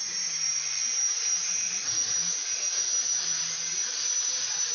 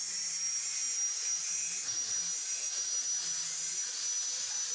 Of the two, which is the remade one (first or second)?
first